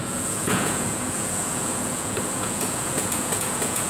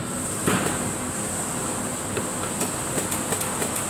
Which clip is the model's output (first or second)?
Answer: first